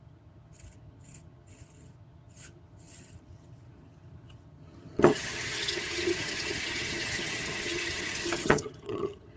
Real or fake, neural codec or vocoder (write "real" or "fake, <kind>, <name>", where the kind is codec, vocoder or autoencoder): fake, vocoder, HiFi-GAN